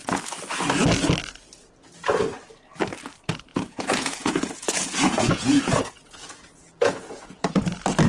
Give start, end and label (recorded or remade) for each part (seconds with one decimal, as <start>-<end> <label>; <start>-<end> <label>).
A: 0.0-3.5 recorded; 3.5-7.6 remade; 7.6-8.1 recorded

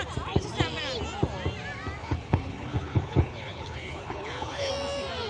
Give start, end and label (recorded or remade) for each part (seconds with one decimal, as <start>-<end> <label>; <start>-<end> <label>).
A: 0.0-2.0 recorded; 2.0-4.7 remade; 4.7-5.3 recorded

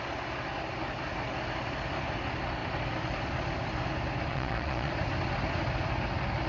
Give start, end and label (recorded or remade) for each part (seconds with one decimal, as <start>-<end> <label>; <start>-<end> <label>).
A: 0.0-4.3 recorded; 4.3-4.9 remade; 4.9-6.5 recorded

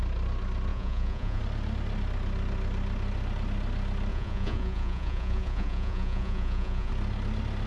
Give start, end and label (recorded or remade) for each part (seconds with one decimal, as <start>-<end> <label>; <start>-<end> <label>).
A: 0.0-0.7 recorded; 0.7-1.4 remade; 1.4-4.1 recorded; 4.1-6.9 remade; 6.9-7.7 recorded

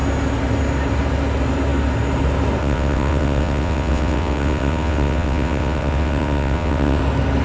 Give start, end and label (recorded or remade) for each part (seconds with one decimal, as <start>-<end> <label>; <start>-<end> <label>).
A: 0.0-2.6 recorded; 2.6-7.0 remade; 7.0-7.4 recorded

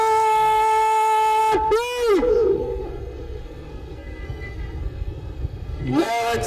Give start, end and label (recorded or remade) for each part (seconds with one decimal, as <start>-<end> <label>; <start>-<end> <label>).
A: 0.0-1.4 remade; 1.4-2.1 recorded; 2.1-6.5 remade

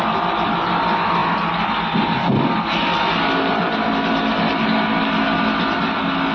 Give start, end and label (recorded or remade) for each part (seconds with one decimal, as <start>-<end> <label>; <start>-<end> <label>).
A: 0.0-6.3 recorded